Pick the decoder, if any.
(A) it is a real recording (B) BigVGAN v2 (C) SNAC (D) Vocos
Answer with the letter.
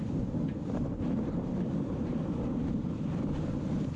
A